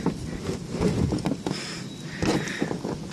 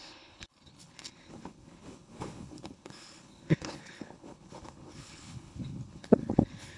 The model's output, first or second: second